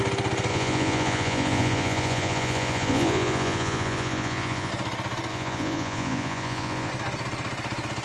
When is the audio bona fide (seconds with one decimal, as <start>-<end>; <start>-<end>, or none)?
0.0-0.5; 4.7-5.3; 6.9-8.0